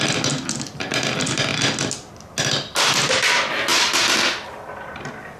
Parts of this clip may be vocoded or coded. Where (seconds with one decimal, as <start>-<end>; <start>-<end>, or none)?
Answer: none